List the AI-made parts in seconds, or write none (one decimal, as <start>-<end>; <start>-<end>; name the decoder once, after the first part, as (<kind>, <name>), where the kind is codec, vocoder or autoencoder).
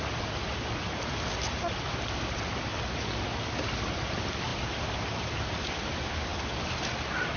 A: none